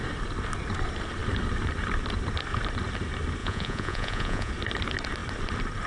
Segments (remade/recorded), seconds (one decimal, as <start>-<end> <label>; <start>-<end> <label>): 0.0-3.4 recorded; 3.4-4.5 remade; 4.5-5.9 recorded